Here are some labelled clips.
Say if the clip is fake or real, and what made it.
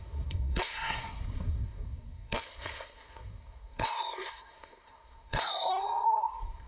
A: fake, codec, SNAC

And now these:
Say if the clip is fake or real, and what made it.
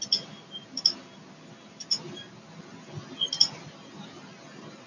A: real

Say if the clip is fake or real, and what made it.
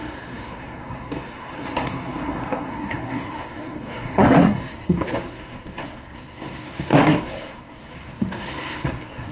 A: fake, codec, SNAC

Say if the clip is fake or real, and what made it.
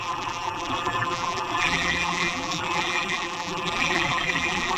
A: fake, vocoder, BigVGAN v2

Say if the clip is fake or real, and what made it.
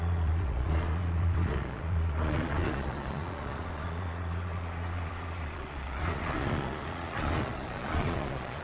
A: fake, vocoder, Vocos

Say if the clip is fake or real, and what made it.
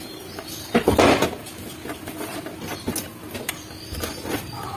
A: real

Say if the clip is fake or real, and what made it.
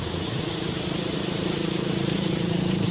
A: fake, vocoder, BigVGAN v2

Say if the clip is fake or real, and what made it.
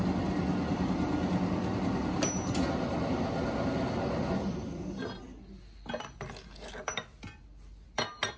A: real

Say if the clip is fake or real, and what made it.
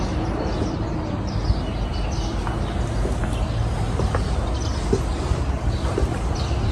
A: real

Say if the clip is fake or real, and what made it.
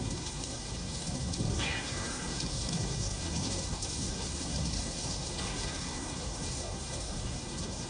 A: fake, codec, SNAC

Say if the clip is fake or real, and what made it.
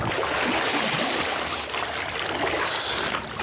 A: real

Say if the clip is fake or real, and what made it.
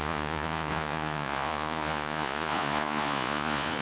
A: fake, vocoder, Vocos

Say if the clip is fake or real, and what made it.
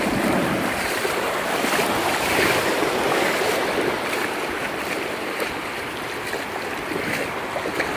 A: real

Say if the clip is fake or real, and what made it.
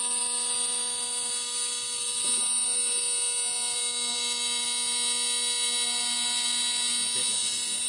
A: real